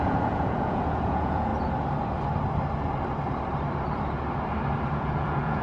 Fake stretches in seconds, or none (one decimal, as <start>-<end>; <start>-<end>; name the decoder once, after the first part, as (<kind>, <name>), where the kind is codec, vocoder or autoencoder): 0.0-1.5 (vocoder, Vocos); 4.9-5.6